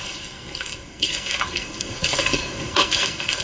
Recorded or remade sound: remade